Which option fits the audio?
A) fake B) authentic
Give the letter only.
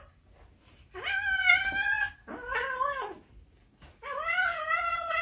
B